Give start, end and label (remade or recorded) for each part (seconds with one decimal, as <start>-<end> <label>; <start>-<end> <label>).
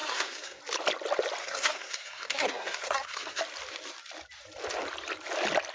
0.0-0.6 remade; 0.6-1.4 recorded; 1.4-3.4 remade; 3.4-5.7 recorded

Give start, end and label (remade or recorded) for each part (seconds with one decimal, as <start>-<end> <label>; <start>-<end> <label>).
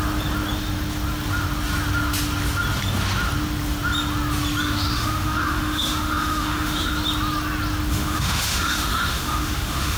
0.0-4.6 recorded; 4.6-6.9 remade; 6.9-7.9 recorded; 7.9-10.0 remade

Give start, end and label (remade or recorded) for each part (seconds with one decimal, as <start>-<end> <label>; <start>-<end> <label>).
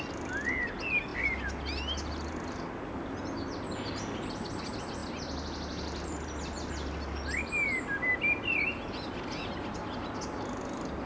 0.0-11.1 recorded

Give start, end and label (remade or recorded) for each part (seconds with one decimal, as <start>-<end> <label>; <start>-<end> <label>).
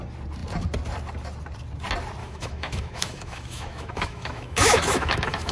0.0-2.2 recorded; 2.2-5.5 remade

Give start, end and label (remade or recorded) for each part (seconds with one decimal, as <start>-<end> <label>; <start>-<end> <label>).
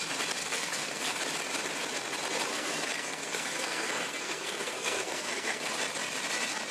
0.0-0.4 recorded; 0.4-1.2 remade; 1.2-2.5 recorded; 2.5-5.7 remade; 5.7-6.7 recorded